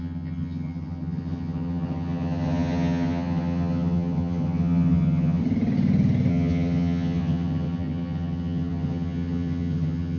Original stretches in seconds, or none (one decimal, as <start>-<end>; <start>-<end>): 5.4-6.3